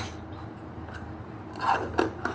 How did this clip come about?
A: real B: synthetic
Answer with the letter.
A